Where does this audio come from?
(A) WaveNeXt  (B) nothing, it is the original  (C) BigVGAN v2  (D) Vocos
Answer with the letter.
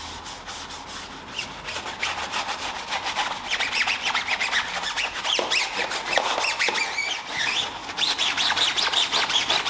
B